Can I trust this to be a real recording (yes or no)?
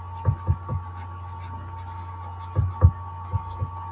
yes